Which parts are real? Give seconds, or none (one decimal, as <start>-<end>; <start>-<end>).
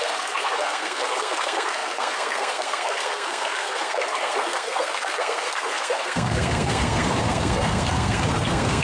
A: none